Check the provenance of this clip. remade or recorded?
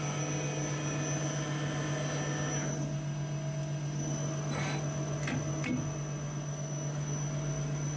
recorded